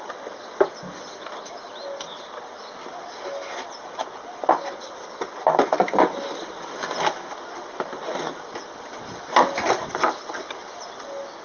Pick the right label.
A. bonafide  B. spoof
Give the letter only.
A